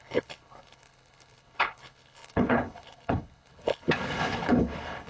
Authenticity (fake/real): fake